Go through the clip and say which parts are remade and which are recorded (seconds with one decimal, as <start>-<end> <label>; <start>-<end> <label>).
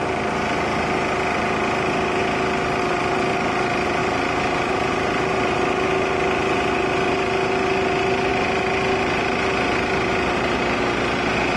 0.0-11.6 recorded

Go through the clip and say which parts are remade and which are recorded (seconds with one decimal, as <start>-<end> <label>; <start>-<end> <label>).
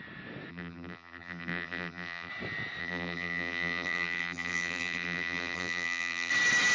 0.0-0.5 recorded; 0.5-2.3 remade; 2.3-2.8 recorded; 2.8-6.3 remade; 6.3-6.7 recorded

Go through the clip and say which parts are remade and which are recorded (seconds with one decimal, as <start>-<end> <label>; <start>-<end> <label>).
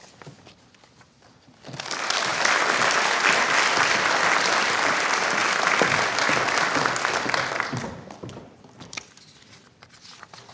0.0-10.5 recorded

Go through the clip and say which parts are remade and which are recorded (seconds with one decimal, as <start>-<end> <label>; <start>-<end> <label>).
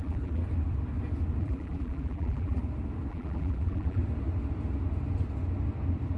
0.0-0.4 remade; 0.4-1.4 recorded; 1.4-2.6 remade; 2.6-3.1 recorded; 3.1-4.0 remade; 4.0-6.2 recorded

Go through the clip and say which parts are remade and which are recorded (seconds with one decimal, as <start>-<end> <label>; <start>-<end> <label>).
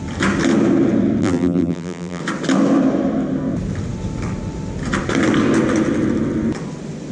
0.0-1.2 recorded; 1.2-2.2 remade; 2.2-7.1 recorded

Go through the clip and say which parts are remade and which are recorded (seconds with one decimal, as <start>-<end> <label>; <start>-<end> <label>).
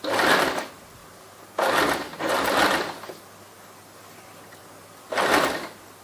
0.0-6.0 recorded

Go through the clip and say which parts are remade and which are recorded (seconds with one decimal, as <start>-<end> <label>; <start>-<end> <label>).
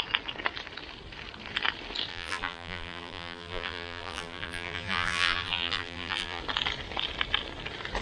0.0-2.1 recorded; 2.1-6.4 remade; 6.4-8.0 recorded